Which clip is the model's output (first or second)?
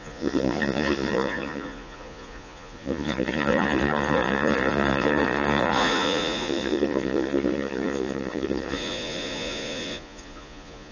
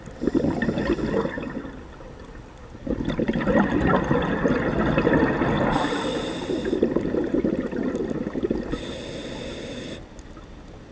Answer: first